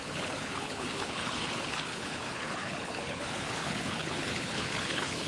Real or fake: fake